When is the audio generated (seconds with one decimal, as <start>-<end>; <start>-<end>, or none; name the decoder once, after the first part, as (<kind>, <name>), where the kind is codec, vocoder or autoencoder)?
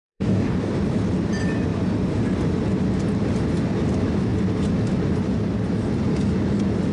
0.0-0.7 (codec, DAC)